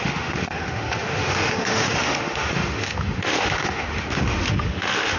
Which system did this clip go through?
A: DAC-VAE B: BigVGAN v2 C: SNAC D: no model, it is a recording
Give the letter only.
A